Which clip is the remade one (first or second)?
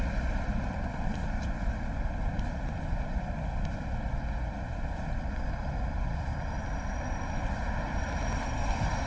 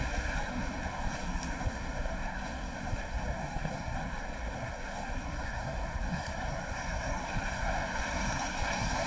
second